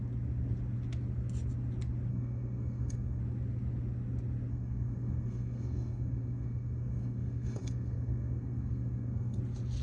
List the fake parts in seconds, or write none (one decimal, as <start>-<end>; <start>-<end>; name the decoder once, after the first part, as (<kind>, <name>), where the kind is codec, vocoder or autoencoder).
2.1-3.2 (codec, SNAC); 4.5-9.4